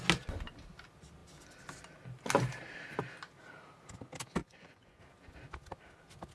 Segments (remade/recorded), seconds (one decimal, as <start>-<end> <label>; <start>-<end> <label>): 0.0-4.4 recorded; 4.4-5.0 remade; 5.0-6.3 recorded